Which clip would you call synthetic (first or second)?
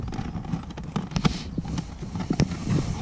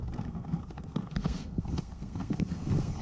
second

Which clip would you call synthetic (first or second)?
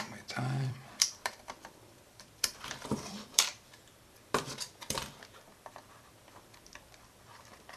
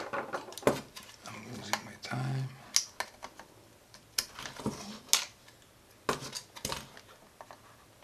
first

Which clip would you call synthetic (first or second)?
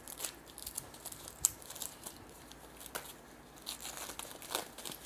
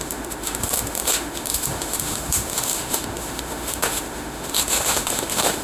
second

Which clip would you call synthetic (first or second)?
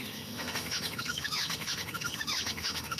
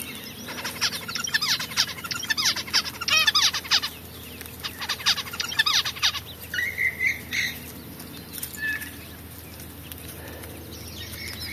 first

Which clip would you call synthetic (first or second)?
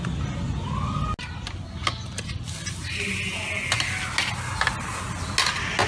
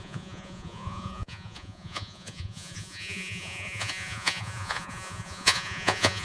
second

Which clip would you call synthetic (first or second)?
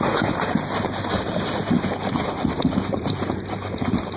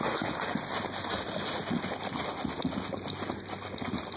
first